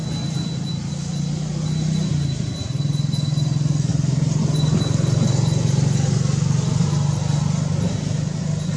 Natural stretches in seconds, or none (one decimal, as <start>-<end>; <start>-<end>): 0.0-8.8